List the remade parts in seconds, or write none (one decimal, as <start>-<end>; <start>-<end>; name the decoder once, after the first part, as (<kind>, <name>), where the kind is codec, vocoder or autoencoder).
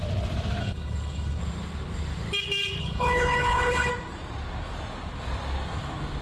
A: 0.6-1.4 (codec, HILCodec); 2.8-3.9